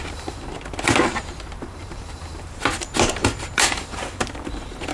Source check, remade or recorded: remade